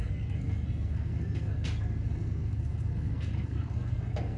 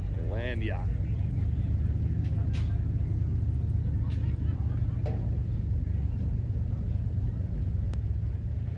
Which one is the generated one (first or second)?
first